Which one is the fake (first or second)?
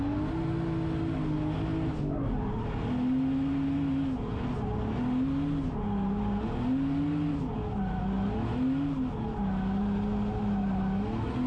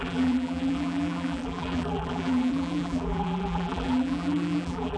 second